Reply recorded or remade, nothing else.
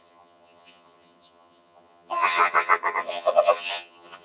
remade